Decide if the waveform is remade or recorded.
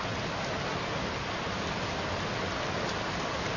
recorded